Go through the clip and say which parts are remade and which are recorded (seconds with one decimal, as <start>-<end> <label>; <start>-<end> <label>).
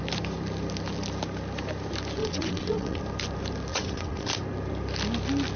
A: 0.0-2.2 recorded; 2.2-3.0 remade; 3.0-3.7 recorded; 3.7-4.3 remade; 4.3-5.6 recorded